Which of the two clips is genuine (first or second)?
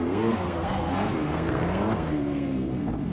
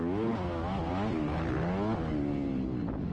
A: second